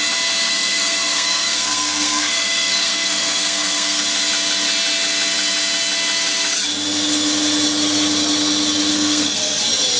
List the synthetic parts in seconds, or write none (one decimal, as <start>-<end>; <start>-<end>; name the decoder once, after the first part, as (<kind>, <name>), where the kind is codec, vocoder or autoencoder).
0.5-4.0 (codec, SNAC); 8.9-9.6

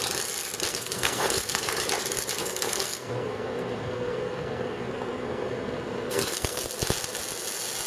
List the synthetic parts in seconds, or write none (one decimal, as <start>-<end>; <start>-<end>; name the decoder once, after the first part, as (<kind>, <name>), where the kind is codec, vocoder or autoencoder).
0.7-1.8 (codec, SNAC); 2.4-6.6